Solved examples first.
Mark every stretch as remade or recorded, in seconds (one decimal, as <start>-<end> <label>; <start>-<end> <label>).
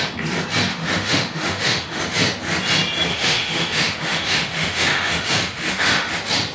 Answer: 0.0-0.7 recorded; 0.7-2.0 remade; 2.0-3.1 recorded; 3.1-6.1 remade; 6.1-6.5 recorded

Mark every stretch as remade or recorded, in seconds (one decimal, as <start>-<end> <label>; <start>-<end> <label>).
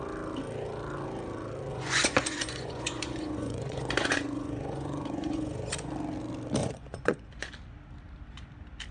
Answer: 0.0-1.7 recorded; 1.7-5.9 remade; 5.9-6.6 recorded; 6.6-7.5 remade; 7.5-8.9 recorded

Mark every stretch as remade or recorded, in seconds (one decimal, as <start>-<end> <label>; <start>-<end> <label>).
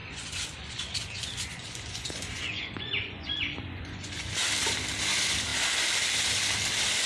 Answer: 0.0-4.3 remade; 4.3-7.1 recorded